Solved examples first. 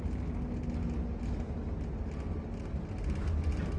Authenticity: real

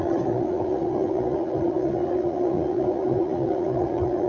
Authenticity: fake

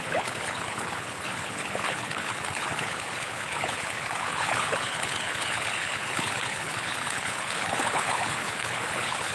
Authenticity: fake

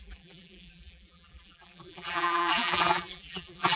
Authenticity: fake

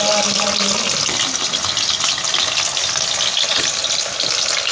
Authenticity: real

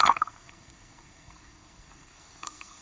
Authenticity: fake